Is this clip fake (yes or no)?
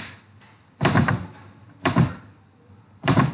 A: yes